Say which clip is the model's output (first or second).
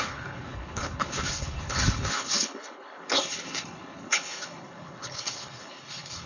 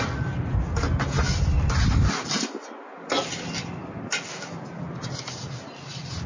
first